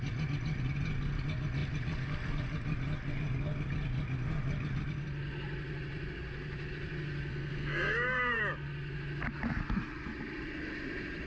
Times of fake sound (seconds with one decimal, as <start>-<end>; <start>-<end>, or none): 7.3-8.4